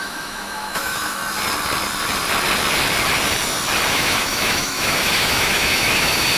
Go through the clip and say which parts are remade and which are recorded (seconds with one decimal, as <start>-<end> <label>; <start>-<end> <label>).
0.0-1.2 remade; 1.2-3.9 recorded; 3.9-6.4 remade